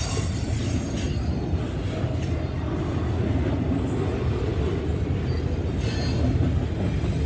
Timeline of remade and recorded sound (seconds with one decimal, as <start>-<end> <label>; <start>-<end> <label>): 0.0-7.3 recorded